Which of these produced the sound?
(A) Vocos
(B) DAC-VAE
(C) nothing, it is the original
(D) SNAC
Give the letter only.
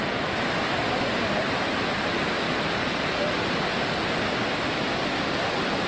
C